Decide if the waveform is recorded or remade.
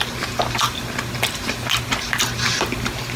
recorded